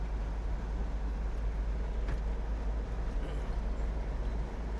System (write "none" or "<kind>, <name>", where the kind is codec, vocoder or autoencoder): none